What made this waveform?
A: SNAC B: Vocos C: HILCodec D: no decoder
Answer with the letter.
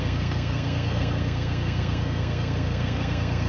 A